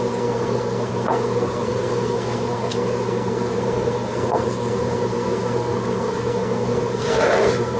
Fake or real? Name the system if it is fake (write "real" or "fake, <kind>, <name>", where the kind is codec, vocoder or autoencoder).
fake, codec, SNAC